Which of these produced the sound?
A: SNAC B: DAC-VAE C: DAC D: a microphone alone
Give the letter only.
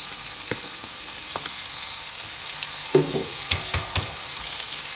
A